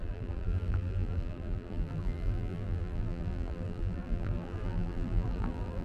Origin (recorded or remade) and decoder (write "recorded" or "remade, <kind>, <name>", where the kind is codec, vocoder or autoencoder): remade, vocoder, BigVGAN v2